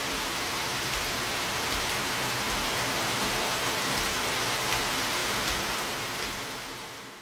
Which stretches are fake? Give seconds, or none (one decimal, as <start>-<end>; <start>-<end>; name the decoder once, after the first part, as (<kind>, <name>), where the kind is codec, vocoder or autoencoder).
none